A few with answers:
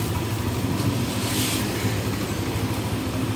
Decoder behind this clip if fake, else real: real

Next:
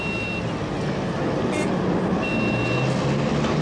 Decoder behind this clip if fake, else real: real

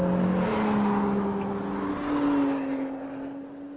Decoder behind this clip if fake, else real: real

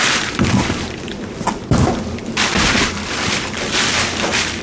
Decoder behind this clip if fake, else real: fake, vocoder, BigVGAN v2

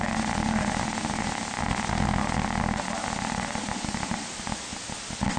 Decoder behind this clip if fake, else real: real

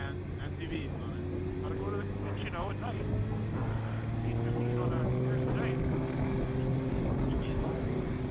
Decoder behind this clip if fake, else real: real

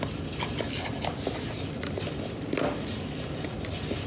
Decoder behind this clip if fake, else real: real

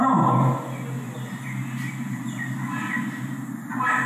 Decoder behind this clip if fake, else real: real